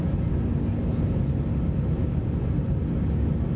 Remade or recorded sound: recorded